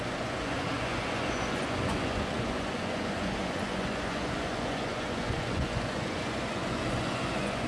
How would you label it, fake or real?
fake